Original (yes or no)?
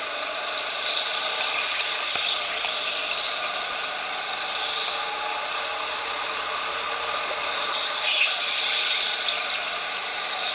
yes